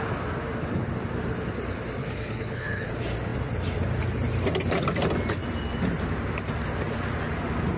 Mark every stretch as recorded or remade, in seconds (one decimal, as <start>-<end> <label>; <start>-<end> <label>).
0.0-2.0 recorded; 2.0-2.9 remade; 2.9-7.8 recorded